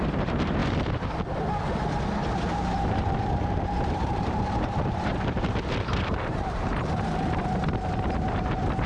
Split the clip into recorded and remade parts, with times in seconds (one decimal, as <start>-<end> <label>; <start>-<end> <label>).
0.0-0.6 remade; 0.6-2.5 recorded; 2.5-8.9 remade